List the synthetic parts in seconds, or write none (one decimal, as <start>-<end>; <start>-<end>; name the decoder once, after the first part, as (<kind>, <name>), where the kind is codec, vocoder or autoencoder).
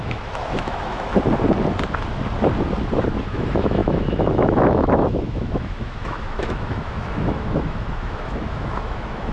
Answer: 0.0-1.1 (autoencoder, DAC-VAE); 3.2-9.3